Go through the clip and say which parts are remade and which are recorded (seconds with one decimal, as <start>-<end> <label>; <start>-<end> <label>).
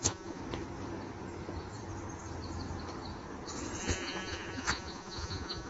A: 0.0-0.4 remade; 0.4-3.8 recorded; 3.8-5.7 remade